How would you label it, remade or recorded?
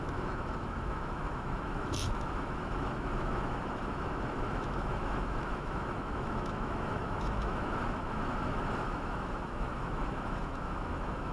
remade